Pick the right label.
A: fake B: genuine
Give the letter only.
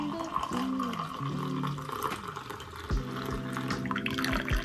B